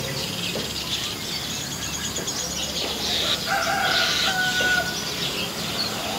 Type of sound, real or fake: real